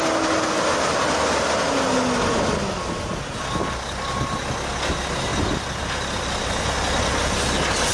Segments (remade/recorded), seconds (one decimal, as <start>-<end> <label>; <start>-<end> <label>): 0.0-7.9 recorded